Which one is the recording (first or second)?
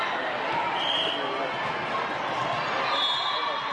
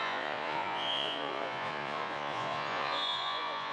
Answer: first